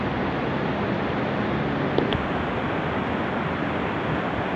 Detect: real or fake real